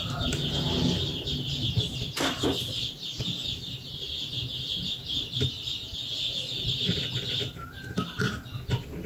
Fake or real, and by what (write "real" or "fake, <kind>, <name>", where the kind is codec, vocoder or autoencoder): real